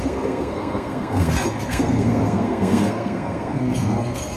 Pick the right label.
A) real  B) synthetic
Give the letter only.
B